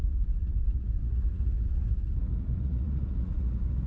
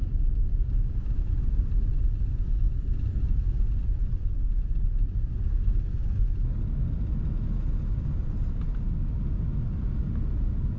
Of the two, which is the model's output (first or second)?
first